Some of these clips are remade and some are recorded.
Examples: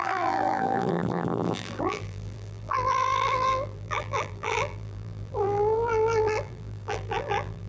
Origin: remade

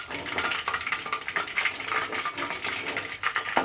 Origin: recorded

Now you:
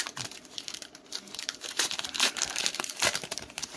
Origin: remade